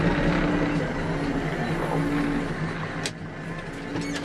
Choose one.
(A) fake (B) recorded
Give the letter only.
B